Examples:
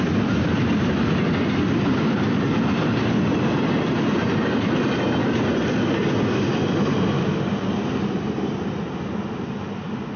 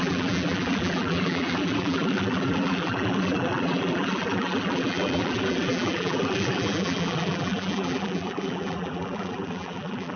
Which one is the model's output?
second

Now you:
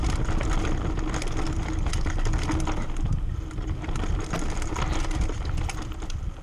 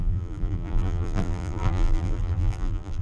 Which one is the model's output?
second